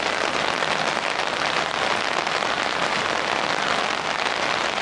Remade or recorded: recorded